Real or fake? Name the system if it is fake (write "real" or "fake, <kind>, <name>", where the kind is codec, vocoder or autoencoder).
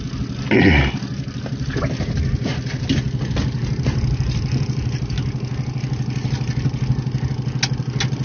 real